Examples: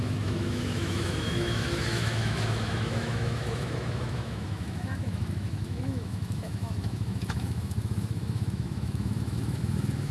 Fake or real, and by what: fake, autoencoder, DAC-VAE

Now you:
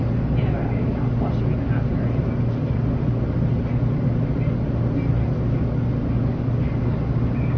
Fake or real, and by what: real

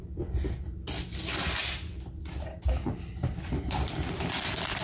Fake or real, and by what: real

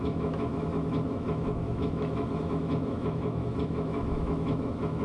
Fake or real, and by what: fake, autoencoder, DAC-VAE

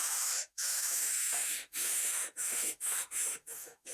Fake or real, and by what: fake, autoencoder, DAC-VAE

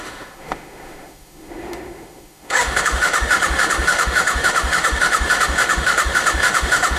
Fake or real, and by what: fake, autoencoder, DAC-VAE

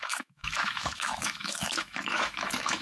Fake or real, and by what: fake, autoencoder, DAC-VAE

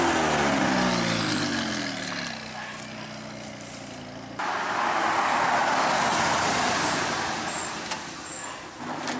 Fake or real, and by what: real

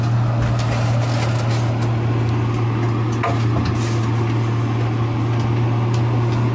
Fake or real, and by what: real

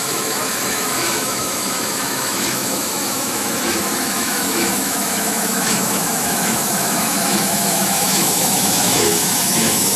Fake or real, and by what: fake, autoencoder, DAC-VAE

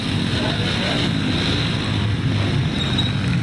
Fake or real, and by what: real